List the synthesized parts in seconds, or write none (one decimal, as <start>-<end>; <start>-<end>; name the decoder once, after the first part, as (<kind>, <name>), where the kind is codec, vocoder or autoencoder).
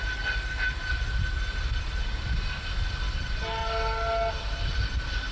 3.2-3.6 (vocoder, BigVGAN v2); 4.3-5.3